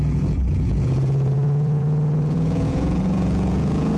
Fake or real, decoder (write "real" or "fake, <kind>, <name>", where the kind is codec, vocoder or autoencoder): fake, vocoder, Vocos